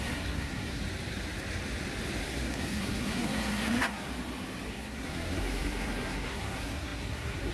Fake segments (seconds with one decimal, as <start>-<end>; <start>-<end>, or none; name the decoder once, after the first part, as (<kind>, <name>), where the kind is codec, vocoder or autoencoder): 0.0-0.8 (codec, SNAC); 2.2-4.1; 4.7-7.5